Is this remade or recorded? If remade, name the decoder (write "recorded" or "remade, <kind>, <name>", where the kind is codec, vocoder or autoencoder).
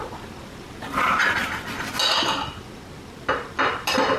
recorded